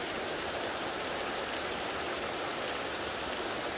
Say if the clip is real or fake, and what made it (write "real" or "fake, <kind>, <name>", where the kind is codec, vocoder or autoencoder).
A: real